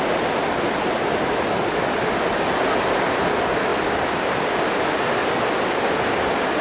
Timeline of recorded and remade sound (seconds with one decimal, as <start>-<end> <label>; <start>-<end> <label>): 0.0-3.7 recorded; 3.7-4.5 remade; 4.5-5.2 recorded; 5.2-6.6 remade